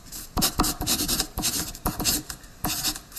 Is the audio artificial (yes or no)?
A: no